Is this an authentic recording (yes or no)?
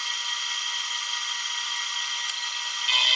yes